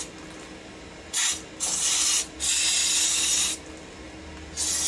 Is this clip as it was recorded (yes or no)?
yes